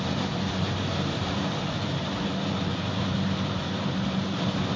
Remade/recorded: remade